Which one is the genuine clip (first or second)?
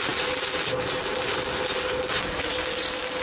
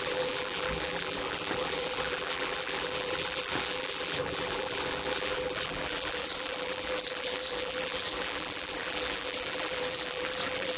first